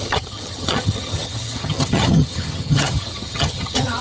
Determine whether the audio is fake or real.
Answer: fake